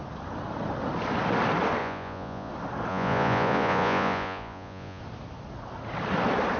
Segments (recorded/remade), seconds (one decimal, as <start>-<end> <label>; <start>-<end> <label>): 0.0-1.8 recorded; 1.8-2.5 remade; 2.5-2.9 recorded; 2.9-5.0 remade; 5.0-6.6 recorded